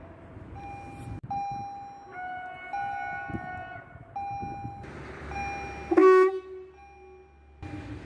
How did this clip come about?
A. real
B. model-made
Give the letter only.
A